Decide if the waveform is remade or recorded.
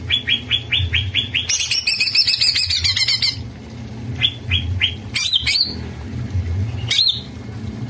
recorded